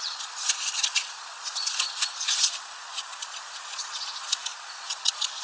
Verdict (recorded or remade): remade